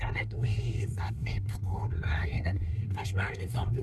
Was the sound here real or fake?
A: fake